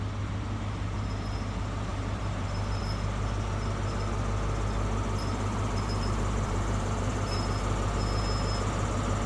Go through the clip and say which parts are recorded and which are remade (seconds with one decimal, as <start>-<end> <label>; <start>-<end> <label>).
0.0-1.9 recorded; 1.9-2.8 remade; 2.8-5.3 recorded; 5.3-7.1 remade; 7.1-9.3 recorded